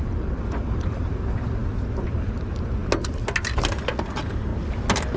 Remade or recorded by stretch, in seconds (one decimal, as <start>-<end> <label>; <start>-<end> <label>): 0.0-5.2 recorded